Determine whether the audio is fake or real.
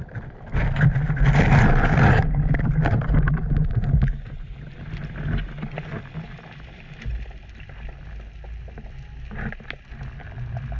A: real